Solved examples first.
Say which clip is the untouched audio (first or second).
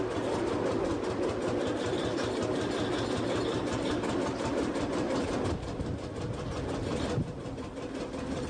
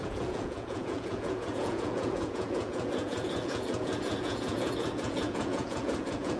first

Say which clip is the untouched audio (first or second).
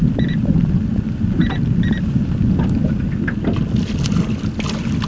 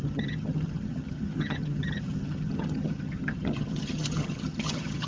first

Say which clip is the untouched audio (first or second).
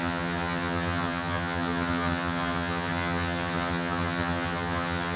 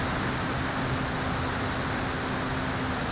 second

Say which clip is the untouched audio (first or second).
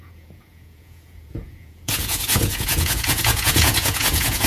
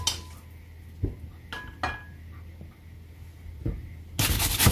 second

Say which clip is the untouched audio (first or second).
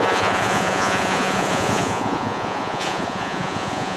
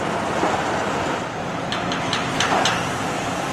second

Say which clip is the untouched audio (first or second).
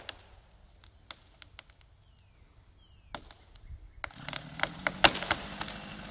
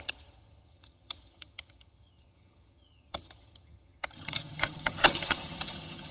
first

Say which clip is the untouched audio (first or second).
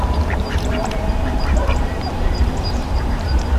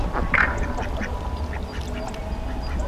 second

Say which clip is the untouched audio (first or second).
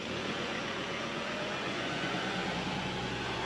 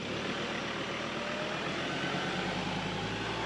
second